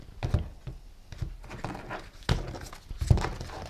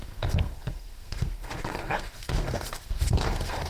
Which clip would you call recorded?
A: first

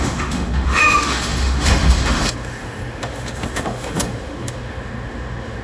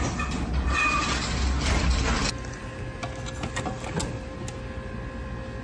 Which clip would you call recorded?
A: second